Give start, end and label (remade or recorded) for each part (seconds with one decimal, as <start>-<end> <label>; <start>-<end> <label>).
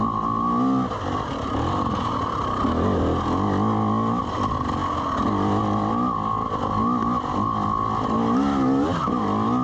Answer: 0.0-9.6 recorded